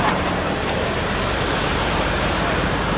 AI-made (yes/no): yes